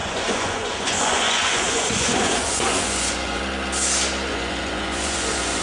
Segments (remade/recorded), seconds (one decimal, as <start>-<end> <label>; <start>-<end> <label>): 0.0-3.4 remade; 3.4-4.3 recorded; 4.3-5.6 remade

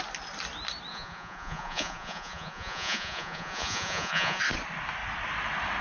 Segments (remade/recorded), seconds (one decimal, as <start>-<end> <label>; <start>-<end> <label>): 0.0-0.9 recorded; 0.9-4.4 remade; 4.4-5.8 recorded

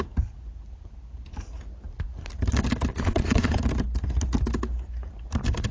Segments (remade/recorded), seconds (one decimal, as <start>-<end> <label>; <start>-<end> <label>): 0.0-2.9 recorded; 2.9-3.6 remade; 3.6-5.7 recorded

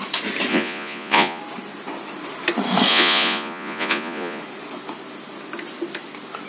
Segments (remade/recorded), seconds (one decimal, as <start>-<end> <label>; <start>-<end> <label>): 0.0-0.5 recorded; 0.5-1.4 remade; 1.4-2.9 recorded; 2.9-4.4 remade; 4.4-6.5 recorded

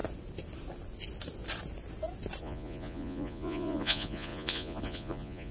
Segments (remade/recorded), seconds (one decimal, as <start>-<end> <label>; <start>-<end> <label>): 0.0-2.4 recorded; 2.4-5.5 remade

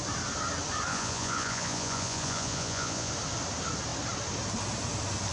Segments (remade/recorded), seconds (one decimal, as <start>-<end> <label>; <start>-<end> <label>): 0.0-0.9 recorded; 0.9-3.1 remade; 3.1-5.3 recorded

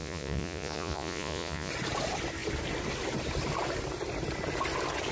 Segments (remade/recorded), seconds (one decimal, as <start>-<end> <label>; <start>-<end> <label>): 0.0-1.7 remade; 1.7-5.1 recorded

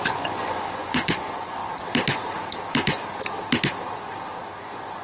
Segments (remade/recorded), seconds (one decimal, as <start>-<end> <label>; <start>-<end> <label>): 0.0-1.6 remade; 1.6-4.6 recorded; 4.6-5.0 remade